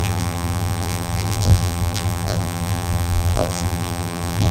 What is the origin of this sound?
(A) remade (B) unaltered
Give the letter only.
A